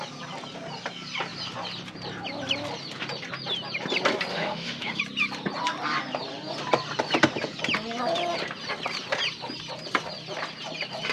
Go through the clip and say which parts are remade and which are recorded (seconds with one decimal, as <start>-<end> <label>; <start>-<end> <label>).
0.0-4.3 recorded; 4.3-5.0 remade; 5.0-11.1 recorded

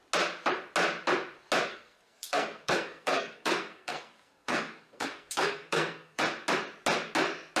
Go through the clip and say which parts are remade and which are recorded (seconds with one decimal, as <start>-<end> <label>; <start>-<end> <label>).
0.0-1.7 recorded; 1.7-6.2 remade; 6.2-7.6 recorded

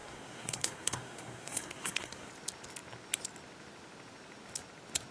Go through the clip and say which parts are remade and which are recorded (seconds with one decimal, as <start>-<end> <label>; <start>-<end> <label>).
0.0-2.3 remade; 2.3-5.1 recorded

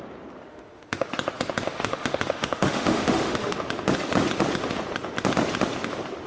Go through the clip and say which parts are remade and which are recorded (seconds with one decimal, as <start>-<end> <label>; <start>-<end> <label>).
0.0-0.5 recorded; 0.5-1.1 remade; 1.1-1.6 recorded; 1.6-3.6 remade; 3.6-6.3 recorded

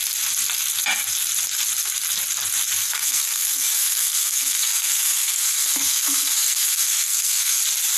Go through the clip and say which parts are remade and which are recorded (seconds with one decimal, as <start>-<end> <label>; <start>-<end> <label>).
0.0-2.8 recorded; 2.8-7.6 remade; 7.6-8.0 recorded

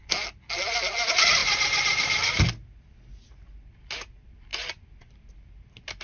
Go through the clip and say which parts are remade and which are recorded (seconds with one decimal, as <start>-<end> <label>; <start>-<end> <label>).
0.0-6.0 recorded

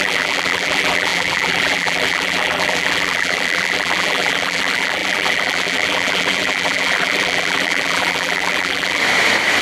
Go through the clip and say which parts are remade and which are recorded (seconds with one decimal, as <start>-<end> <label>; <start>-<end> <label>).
0.0-9.0 remade; 9.0-9.6 recorded